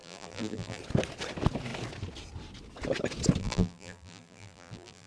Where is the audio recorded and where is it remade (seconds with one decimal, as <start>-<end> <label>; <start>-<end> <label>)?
0.0-0.8 remade; 0.8-3.4 recorded; 3.4-5.1 remade